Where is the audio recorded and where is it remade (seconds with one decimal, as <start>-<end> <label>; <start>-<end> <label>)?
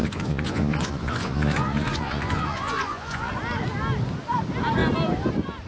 0.0-3.3 remade; 3.3-5.7 recorded